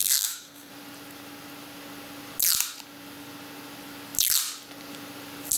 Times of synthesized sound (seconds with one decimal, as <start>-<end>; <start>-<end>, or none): 0.0-0.7